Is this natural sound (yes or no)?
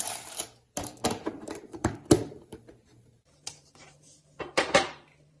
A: no